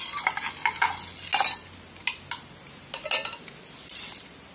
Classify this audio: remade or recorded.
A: recorded